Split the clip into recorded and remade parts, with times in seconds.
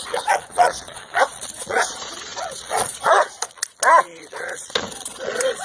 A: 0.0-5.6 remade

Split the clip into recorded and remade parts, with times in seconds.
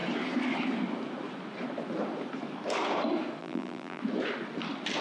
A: 0.0-3.4 recorded; 3.4-4.0 remade; 4.0-5.0 recorded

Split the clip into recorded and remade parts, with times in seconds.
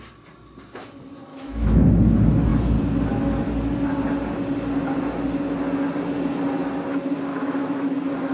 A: 0.0-1.3 recorded; 1.3-1.9 remade; 1.9-7.3 recorded; 7.3-7.9 remade; 7.9-8.3 recorded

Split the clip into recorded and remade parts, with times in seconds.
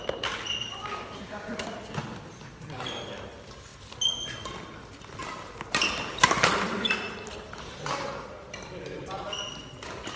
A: 0.0-10.2 recorded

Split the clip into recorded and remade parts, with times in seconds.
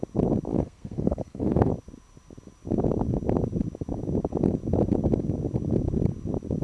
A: 0.0-0.5 recorded; 0.5-1.7 remade; 1.7-6.6 recorded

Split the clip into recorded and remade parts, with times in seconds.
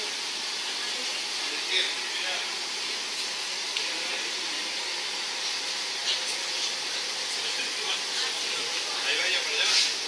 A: 0.0-10.1 recorded